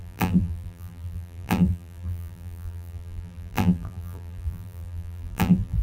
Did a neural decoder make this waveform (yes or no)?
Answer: yes